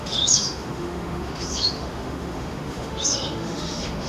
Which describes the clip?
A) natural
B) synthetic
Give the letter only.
B